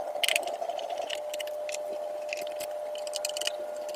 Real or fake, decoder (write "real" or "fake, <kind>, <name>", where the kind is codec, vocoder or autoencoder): real